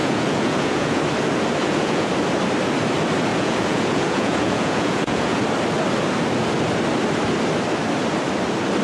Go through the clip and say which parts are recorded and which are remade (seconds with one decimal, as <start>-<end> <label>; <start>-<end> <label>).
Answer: 0.0-1.0 remade; 1.0-1.6 recorded; 1.6-2.1 remade; 2.1-3.3 recorded; 3.3-5.4 remade; 5.4-8.8 recorded